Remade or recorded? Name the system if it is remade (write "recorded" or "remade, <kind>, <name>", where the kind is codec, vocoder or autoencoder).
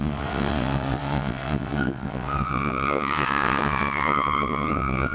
remade, vocoder, WaveNeXt